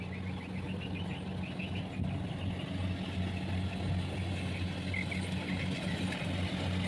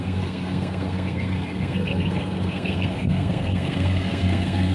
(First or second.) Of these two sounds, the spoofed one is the second